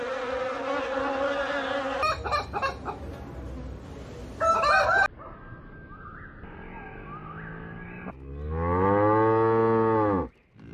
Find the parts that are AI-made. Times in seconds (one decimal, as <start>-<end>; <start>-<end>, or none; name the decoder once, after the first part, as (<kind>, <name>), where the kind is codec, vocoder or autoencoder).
none